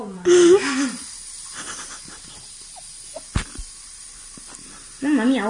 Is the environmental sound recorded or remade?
recorded